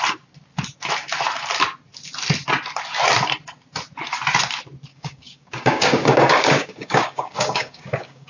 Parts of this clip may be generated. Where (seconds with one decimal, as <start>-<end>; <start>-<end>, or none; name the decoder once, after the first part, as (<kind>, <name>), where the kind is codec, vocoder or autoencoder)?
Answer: 4.9-8.3 (codec, DAC)